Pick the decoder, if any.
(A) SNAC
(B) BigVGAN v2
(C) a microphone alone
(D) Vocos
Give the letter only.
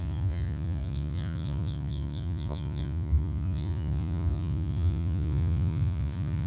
D